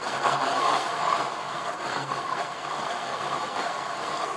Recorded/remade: remade